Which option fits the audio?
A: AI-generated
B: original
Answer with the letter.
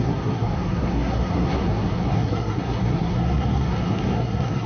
A